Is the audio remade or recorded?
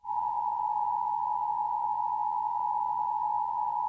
remade